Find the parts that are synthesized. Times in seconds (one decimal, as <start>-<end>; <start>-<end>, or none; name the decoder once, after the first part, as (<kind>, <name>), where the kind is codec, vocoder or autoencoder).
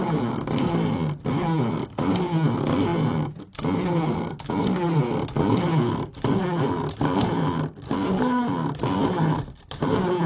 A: none